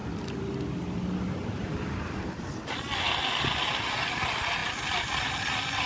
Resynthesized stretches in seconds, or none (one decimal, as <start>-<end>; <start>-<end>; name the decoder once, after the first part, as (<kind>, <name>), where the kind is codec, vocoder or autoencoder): none